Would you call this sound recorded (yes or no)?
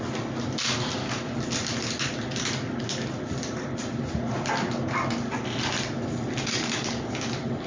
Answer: yes